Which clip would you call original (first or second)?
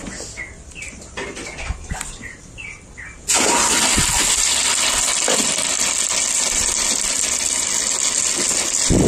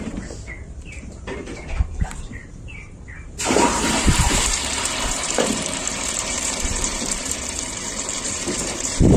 first